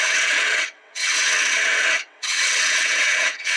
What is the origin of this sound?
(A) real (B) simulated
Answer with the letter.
B